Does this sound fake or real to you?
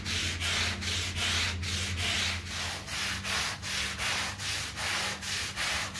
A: real